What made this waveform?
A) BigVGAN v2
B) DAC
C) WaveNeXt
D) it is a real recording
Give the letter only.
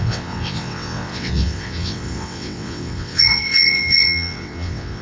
C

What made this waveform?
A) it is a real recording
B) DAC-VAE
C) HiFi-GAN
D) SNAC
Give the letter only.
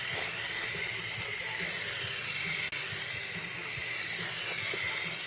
A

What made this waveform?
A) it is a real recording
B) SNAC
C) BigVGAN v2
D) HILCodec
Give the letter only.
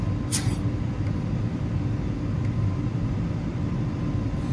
A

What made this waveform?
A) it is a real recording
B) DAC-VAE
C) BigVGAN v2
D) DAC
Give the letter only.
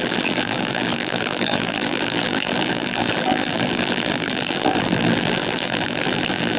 C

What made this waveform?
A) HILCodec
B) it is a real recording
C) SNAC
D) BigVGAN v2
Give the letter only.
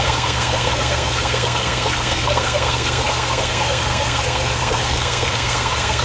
C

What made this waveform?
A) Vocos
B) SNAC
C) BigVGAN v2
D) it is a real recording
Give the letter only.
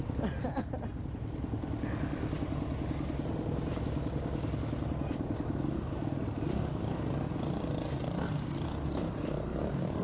D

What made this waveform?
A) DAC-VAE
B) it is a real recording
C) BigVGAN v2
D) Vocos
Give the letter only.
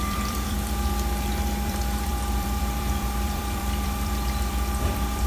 C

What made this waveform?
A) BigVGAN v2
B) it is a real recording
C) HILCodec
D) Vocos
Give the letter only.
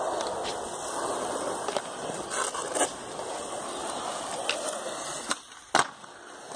B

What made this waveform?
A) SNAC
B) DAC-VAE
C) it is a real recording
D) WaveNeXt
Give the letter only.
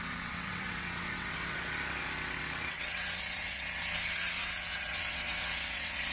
D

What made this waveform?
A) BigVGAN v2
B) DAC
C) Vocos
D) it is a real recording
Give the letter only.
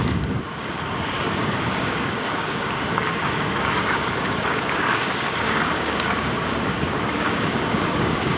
B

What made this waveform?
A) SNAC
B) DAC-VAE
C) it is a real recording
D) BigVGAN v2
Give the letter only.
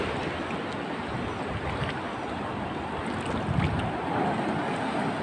C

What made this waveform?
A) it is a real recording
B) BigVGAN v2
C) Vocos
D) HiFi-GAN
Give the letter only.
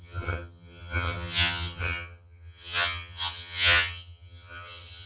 D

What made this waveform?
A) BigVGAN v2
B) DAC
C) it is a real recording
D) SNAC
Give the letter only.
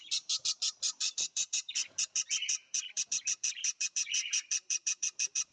A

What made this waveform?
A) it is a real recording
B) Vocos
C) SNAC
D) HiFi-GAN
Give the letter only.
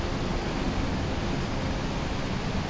A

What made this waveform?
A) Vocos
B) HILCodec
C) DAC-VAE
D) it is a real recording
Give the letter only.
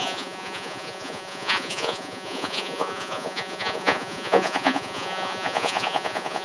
A